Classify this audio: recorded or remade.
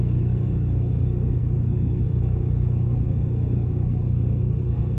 remade